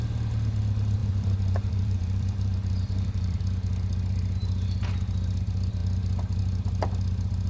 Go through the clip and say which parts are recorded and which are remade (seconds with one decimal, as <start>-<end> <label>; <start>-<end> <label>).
0.0-1.0 recorded; 1.0-3.4 remade; 3.4-7.5 recorded